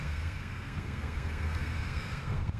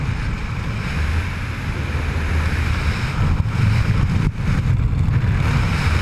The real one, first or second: second